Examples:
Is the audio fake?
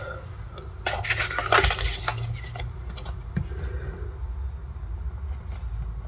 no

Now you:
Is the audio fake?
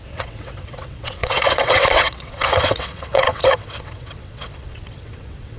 yes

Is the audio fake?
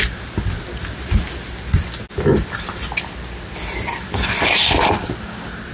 no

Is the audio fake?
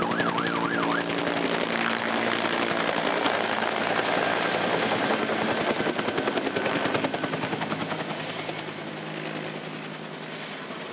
no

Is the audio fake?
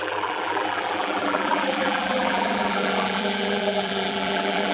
yes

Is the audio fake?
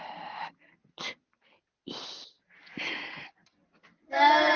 no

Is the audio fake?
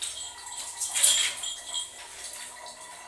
no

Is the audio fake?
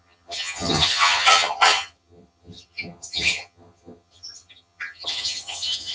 yes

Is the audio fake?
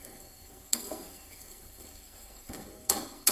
yes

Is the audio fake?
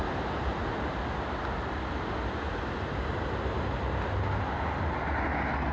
no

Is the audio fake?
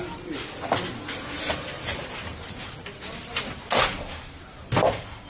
no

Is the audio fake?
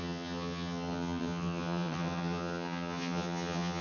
yes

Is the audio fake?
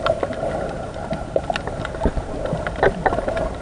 yes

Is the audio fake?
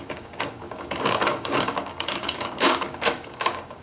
yes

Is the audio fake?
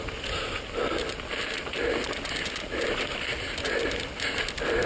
no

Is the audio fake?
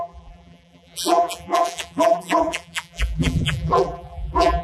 yes